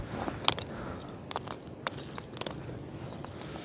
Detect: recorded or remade recorded